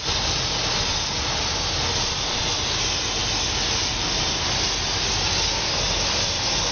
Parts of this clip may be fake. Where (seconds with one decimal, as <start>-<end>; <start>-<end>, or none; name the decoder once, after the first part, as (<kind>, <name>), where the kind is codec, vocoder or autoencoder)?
0.0-0.9 (vocoder, BigVGAN v2); 2.0-3.2; 3.9-6.7